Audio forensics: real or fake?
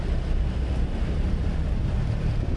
real